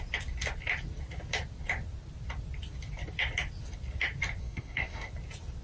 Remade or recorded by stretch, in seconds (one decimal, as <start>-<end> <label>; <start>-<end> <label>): 0.0-4.4 recorded; 4.4-5.1 remade; 5.1-5.6 recorded